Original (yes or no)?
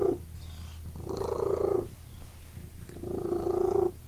yes